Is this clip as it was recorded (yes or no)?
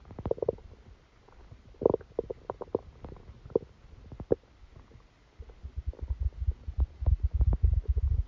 yes